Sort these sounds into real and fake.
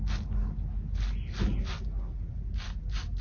real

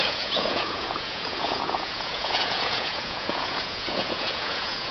fake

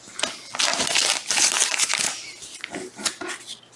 real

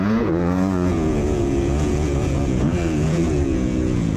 fake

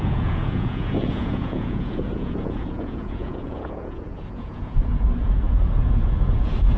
fake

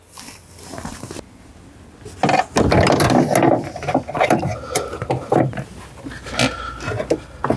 real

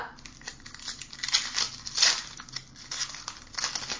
real